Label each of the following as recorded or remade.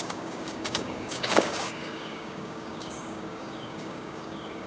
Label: remade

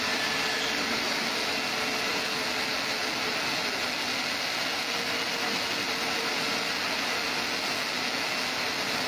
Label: recorded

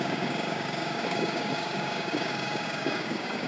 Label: remade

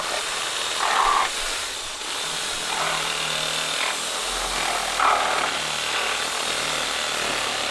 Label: recorded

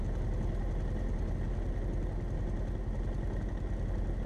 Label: recorded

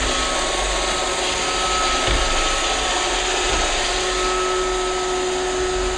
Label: recorded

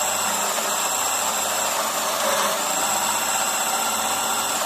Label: remade